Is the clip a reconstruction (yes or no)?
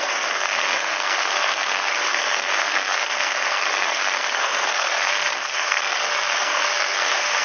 yes